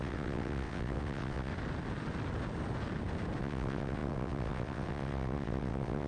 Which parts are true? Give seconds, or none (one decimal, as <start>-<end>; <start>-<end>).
1.5-3.4